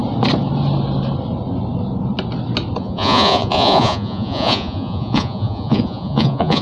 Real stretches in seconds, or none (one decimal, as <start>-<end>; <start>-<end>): 0.0-2.8